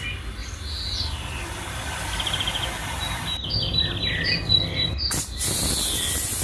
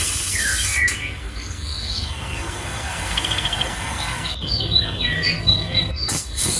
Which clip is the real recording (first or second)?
first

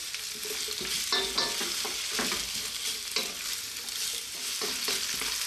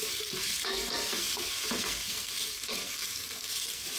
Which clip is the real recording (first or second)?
first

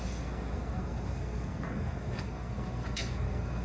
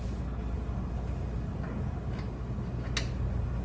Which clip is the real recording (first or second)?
second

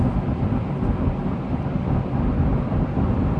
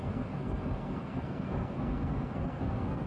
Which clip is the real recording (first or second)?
first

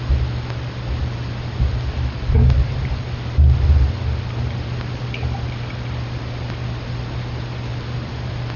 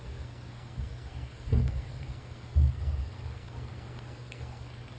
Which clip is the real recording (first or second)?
first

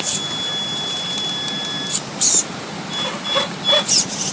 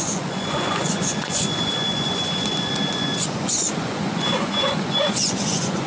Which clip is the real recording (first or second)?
first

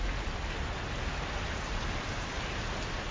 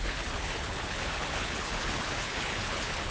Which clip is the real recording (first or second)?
first